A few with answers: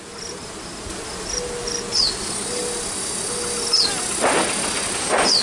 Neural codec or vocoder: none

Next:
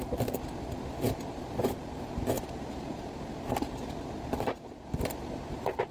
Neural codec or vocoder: none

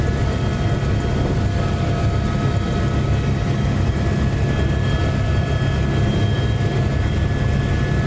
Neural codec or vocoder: none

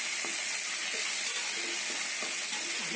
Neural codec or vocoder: none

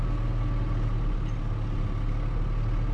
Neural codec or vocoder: none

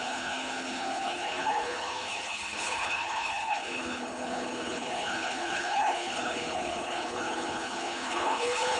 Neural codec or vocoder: codec, HILCodec